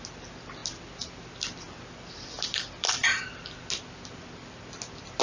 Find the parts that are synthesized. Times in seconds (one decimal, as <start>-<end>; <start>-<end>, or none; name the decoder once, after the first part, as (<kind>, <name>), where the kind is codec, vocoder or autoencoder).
0.6-3.7 (vocoder, BigVGAN v2)